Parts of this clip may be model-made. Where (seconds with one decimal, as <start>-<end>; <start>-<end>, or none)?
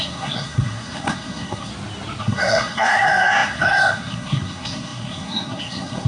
0.0-1.7; 2.2-6.1